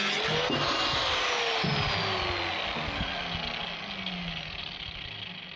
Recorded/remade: recorded